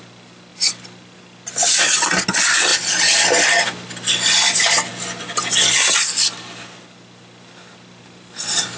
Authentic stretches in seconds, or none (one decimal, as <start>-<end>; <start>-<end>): 0.0-8.8